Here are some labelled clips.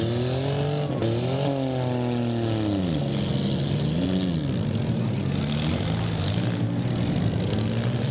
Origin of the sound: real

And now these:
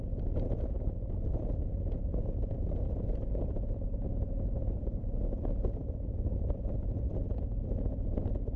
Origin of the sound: real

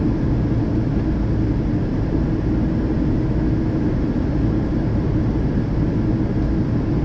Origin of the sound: real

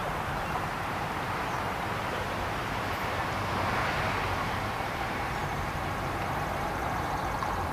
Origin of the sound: fake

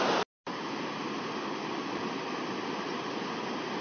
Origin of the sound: real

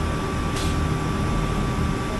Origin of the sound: real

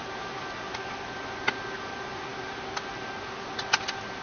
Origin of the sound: real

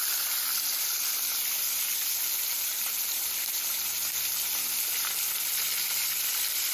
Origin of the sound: real